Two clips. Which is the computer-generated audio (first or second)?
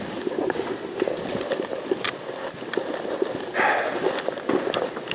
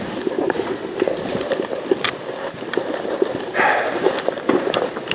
second